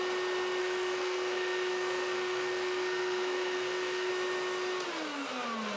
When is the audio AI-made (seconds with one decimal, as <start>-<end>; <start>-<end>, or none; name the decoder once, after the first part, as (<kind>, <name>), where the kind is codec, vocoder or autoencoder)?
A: 0.6-4.1 (codec, SNAC)